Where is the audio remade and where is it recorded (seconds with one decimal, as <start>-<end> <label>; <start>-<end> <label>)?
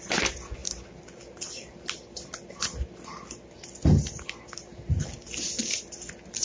0.0-6.4 recorded